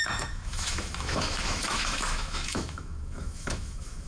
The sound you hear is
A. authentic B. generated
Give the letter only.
B